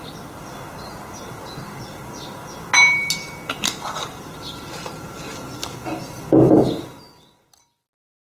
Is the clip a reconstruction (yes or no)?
no